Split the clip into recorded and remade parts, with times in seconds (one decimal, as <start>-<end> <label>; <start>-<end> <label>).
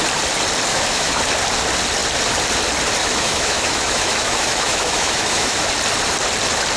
0.0-0.7 recorded; 0.7-1.2 remade; 1.2-3.0 recorded; 3.0-5.7 remade; 5.7-6.8 recorded